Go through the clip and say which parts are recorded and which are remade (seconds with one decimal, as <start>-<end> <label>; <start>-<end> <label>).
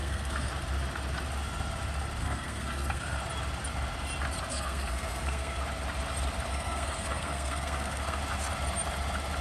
0.0-0.5 remade; 0.5-2.2 recorded; 2.2-3.2 remade; 3.2-4.5 recorded; 4.5-5.6 remade; 5.6-6.5 recorded; 6.5-8.2 remade; 8.2-9.4 recorded